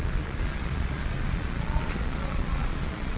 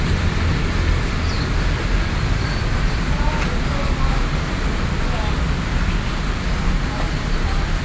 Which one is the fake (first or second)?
first